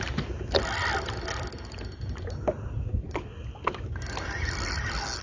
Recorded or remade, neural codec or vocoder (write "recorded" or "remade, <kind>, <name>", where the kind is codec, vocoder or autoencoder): recorded